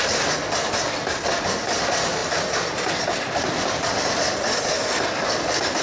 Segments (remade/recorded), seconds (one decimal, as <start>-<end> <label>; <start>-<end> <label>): 0.0-5.8 recorded